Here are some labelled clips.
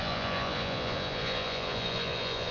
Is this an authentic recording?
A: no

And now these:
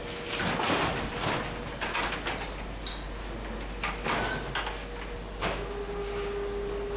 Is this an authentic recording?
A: yes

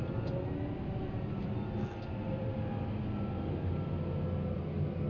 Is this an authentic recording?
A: yes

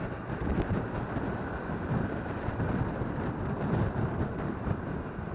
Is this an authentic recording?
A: no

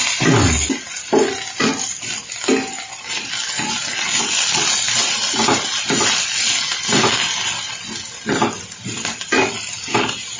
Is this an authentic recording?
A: yes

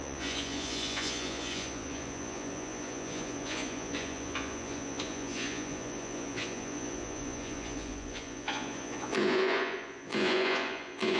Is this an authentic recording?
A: no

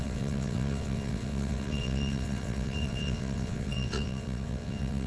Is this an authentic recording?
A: no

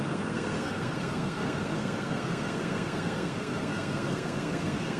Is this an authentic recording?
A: no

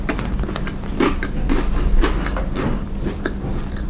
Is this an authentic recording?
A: yes